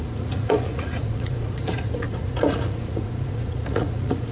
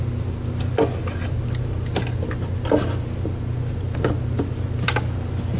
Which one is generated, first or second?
first